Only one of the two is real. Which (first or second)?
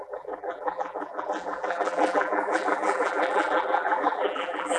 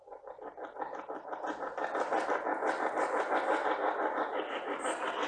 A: second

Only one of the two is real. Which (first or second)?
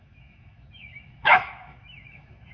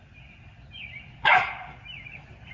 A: second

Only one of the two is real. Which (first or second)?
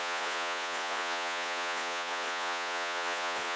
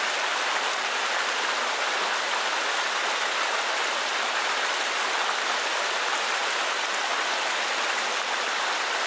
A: second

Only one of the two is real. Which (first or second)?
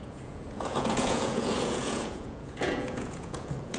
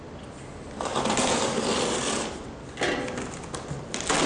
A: second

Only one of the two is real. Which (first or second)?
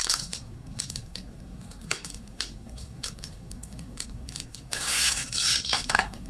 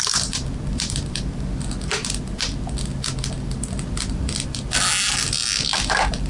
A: second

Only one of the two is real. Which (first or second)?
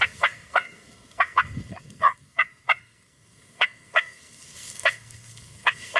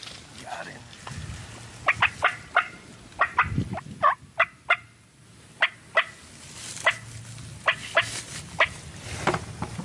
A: second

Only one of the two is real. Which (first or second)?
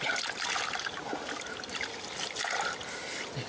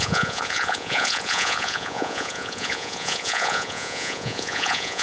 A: first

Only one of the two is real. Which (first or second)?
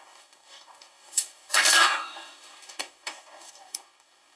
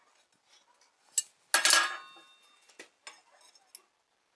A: second